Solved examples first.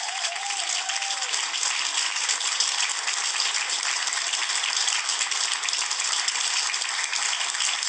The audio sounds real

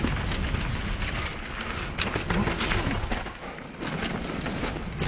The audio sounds real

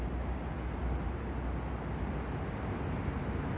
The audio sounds real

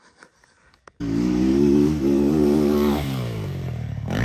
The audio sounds fake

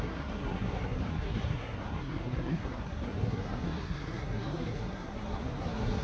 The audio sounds fake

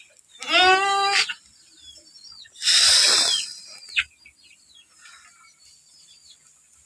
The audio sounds real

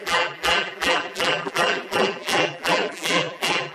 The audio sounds fake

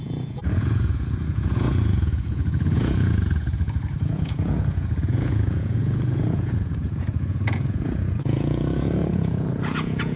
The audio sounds fake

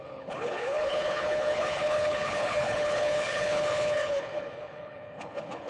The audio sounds fake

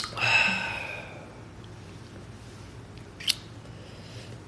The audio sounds real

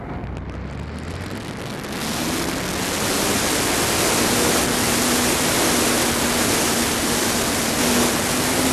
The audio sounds real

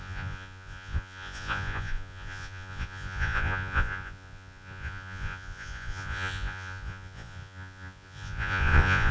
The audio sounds fake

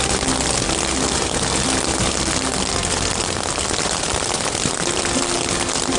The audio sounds real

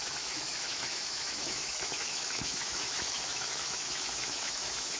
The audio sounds fake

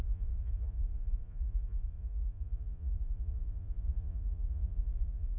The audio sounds fake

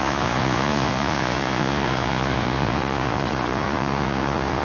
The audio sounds fake